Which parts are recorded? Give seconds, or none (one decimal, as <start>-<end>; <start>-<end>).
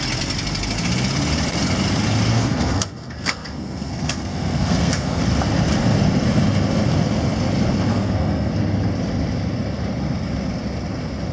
0.0-2.3; 5.2-7.9; 8.5-11.3